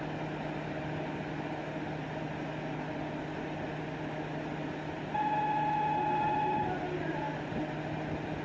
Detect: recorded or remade recorded